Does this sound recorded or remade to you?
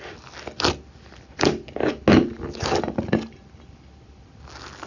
recorded